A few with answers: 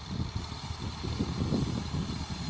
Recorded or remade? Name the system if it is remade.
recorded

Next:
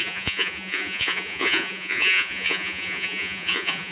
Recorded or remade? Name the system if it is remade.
remade, vocoder, Vocos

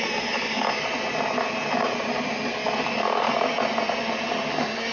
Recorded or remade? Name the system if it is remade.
recorded